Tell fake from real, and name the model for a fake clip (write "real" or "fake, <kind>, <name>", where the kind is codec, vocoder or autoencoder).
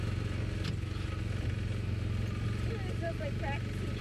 real